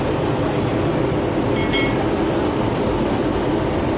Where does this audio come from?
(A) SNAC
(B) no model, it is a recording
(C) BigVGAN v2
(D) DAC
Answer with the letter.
B